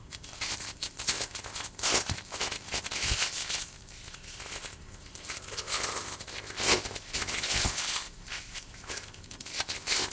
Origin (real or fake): fake